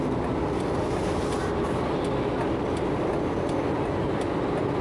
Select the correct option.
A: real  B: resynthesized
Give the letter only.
A